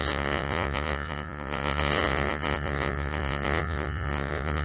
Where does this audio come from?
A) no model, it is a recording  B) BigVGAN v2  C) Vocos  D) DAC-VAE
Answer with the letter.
C